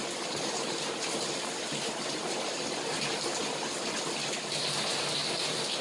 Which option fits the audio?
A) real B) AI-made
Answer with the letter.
A